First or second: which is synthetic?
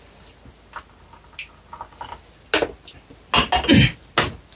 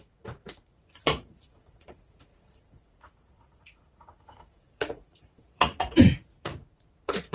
second